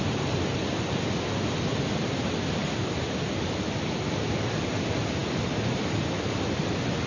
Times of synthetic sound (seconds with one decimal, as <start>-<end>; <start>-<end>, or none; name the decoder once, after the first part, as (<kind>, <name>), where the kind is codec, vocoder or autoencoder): 0.0-2.6 (vocoder, BigVGAN v2); 3.3-7.1